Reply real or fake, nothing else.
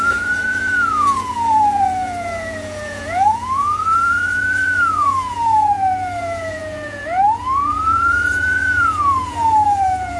fake